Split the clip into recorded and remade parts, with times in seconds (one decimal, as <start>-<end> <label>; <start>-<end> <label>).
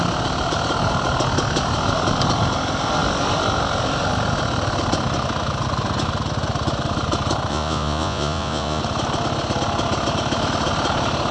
0.0-7.5 recorded; 7.5-8.8 remade; 8.8-11.3 recorded